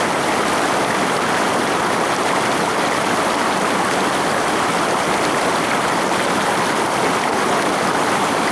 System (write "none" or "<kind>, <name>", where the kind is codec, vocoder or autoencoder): none